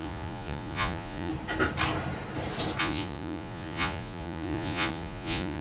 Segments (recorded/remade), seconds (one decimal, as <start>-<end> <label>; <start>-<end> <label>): 0.0-1.3 remade; 1.3-2.8 recorded; 2.8-5.6 remade